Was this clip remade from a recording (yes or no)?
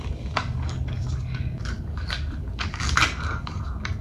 yes